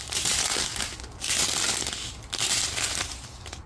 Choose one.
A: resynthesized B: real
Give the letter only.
B